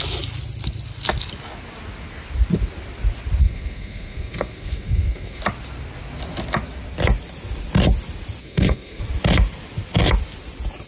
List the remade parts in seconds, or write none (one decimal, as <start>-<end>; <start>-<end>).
3.4-5.4; 8.4-9.0